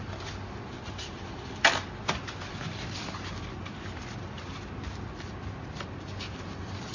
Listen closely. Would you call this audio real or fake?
real